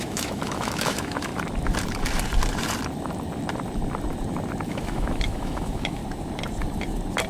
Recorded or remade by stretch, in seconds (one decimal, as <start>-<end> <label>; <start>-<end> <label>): 0.0-1.3 remade; 1.3-4.7 recorded; 4.7-6.0 remade; 6.0-7.3 recorded

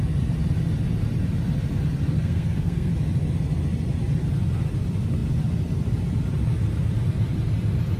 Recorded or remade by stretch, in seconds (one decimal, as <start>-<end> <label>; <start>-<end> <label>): 0.0-2.1 recorded; 2.1-2.9 remade; 2.9-8.0 recorded

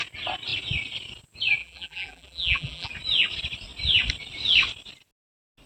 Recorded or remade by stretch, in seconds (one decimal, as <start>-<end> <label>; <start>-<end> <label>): 0.0-1.6 recorded; 1.6-2.9 remade; 2.9-5.7 recorded

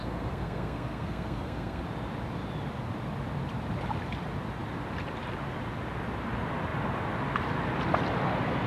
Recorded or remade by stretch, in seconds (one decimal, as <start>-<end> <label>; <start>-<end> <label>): 0.0-1.8 remade; 1.8-8.7 recorded

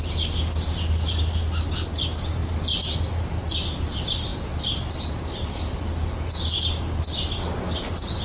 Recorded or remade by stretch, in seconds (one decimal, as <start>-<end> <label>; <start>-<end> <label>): 0.0-8.2 recorded

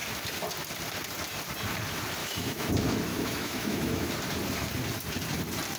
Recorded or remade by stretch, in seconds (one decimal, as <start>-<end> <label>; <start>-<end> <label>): 0.0-2.2 recorded; 2.2-2.7 remade; 2.7-3.1 recorded; 3.1-4.1 remade; 4.1-5.8 recorded